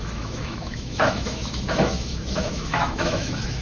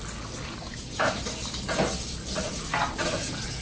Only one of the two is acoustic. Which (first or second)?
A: second